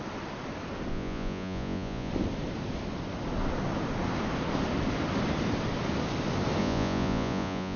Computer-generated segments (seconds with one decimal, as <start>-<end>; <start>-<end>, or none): 0.9-2.1; 6.6-7.8